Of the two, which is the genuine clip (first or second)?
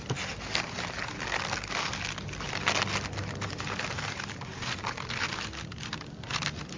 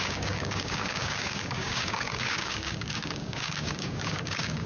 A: first